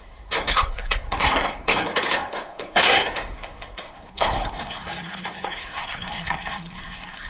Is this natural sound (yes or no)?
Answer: no